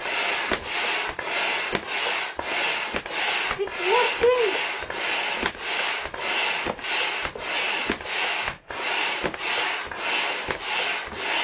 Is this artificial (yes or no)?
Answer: no